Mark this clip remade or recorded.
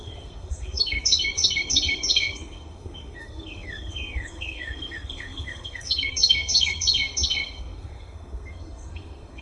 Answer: remade